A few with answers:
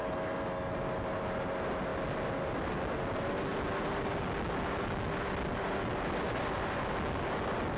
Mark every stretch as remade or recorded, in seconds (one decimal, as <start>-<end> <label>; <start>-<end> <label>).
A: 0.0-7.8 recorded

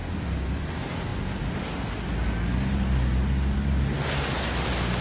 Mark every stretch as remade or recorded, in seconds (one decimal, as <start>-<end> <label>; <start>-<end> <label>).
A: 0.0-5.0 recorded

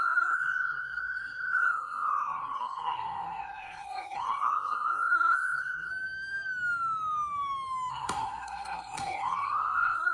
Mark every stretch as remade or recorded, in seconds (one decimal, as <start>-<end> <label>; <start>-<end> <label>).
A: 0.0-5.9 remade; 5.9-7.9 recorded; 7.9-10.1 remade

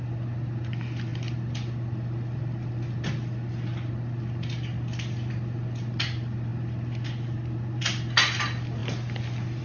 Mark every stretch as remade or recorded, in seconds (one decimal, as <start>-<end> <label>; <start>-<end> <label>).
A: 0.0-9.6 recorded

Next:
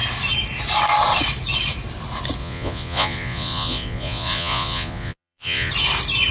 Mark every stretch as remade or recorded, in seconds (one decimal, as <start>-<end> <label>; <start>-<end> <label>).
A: 0.0-2.4 recorded; 2.4-5.7 remade; 5.7-6.3 recorded

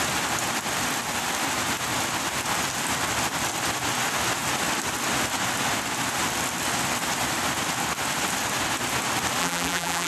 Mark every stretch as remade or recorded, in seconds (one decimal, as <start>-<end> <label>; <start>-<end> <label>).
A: 0.0-9.4 recorded; 9.4-10.1 remade

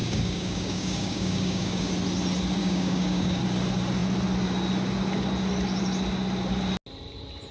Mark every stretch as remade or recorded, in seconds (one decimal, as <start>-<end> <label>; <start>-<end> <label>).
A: 0.0-1.9 remade; 1.9-2.6 recorded; 2.6-3.4 remade; 3.4-7.5 recorded